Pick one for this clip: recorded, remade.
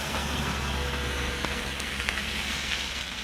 remade